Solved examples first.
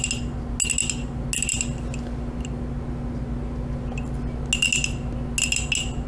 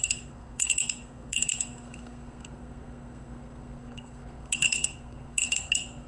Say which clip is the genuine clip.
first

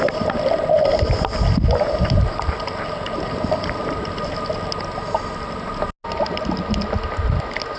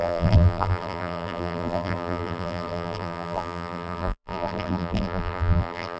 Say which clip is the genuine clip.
first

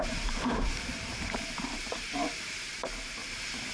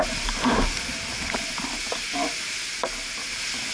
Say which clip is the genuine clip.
second